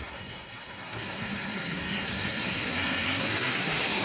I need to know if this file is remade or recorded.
remade